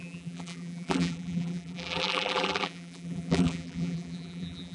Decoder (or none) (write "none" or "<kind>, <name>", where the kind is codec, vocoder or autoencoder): vocoder, BigVGAN v2